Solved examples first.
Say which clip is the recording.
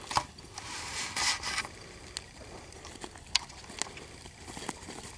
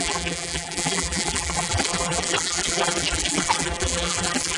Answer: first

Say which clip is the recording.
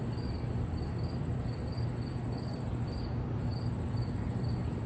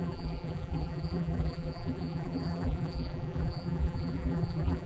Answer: first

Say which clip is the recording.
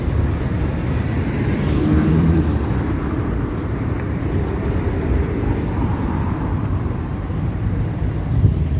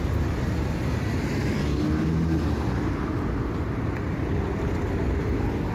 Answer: second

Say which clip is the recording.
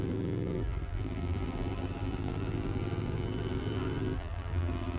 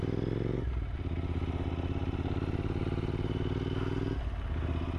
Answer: second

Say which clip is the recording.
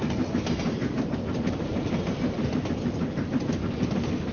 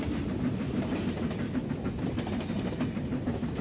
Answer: first